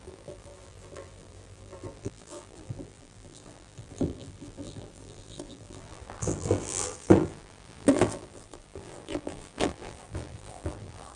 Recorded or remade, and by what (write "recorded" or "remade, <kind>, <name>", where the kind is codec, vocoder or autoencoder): remade, vocoder, BigVGAN v2